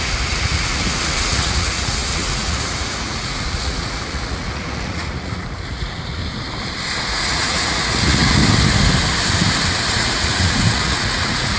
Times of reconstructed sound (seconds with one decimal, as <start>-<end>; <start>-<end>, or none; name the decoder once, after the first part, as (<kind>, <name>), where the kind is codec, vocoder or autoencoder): 0.0-6.2 (vocoder, Vocos); 7.0-8.4; 9.9-11.6